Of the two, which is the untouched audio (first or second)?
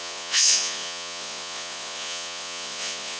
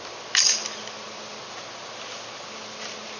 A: second